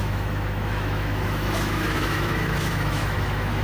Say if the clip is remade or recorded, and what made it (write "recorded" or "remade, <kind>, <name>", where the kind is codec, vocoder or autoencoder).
remade, autoencoder, DAC-VAE